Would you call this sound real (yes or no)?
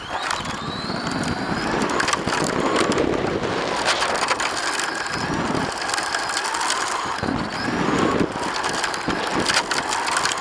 yes